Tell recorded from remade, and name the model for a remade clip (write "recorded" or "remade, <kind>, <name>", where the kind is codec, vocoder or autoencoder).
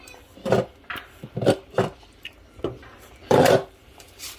remade, vocoder, BigVGAN v2